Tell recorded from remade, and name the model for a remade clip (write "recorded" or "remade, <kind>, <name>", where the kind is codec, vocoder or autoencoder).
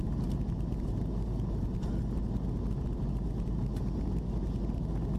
recorded